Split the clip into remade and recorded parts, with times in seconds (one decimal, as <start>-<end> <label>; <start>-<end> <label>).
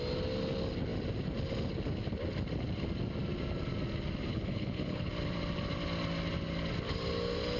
0.0-4.3 recorded; 4.3-5.1 remade; 5.1-7.6 recorded